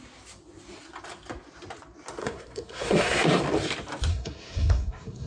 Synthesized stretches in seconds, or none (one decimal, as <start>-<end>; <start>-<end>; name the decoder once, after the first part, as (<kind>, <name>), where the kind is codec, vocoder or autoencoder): 2.2-3.4 (codec, SNAC); 4.1-5.3